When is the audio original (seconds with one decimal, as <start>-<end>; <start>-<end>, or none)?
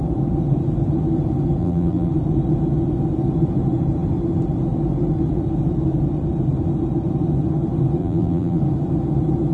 0.0-1.6; 2.1-8.0; 8.6-9.5